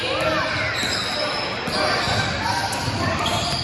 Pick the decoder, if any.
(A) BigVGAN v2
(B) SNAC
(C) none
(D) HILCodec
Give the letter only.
C